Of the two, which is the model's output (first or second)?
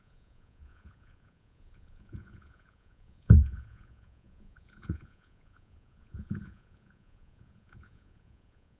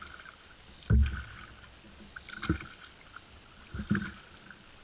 first